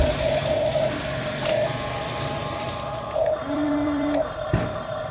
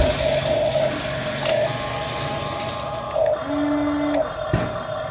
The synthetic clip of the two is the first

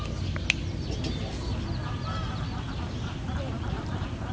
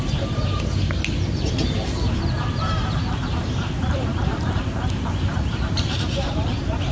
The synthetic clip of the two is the second